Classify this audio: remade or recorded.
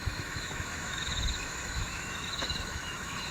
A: remade